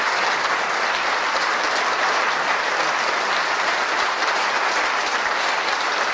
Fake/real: real